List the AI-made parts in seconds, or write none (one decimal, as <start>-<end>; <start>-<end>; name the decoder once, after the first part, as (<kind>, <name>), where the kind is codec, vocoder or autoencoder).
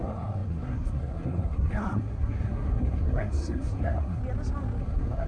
0.0-4.2 (codec, SNAC); 4.8-5.3